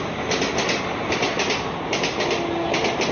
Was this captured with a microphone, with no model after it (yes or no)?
yes